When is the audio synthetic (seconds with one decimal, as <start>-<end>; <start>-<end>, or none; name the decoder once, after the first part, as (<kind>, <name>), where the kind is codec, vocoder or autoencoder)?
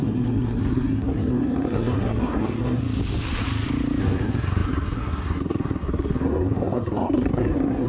0.0-2.8 (codec, SNAC); 4.0-7.9